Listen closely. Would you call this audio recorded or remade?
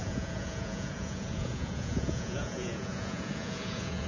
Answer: remade